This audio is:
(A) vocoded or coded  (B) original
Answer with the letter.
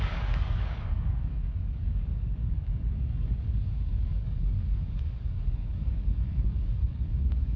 A